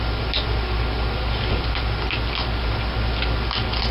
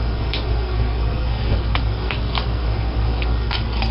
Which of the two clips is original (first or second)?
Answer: first